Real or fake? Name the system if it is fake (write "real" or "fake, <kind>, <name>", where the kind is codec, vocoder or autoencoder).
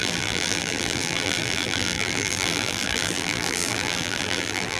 fake, vocoder, BigVGAN v2